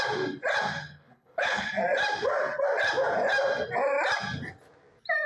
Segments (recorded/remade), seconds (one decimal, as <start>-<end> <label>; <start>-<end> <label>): 0.0-0.8 recorded; 0.8-1.7 remade; 1.7-5.3 recorded